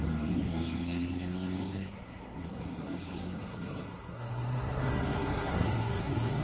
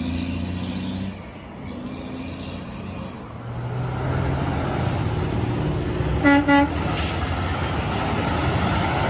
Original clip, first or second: second